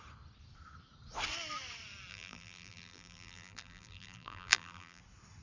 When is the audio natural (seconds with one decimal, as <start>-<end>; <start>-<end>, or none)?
0.0-2.1; 5.0-5.4